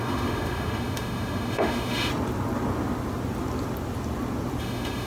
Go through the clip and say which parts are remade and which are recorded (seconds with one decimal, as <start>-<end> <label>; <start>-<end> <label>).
0.0-2.1 remade; 2.1-4.6 recorded; 4.6-5.1 remade